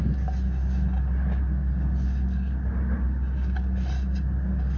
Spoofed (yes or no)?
no